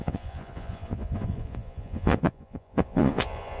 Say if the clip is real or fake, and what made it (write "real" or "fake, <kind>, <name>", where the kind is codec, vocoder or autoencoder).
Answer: fake, vocoder, Vocos